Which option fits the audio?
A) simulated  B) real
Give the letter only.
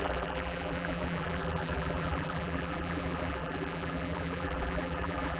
A